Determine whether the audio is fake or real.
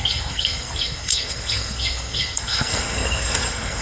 fake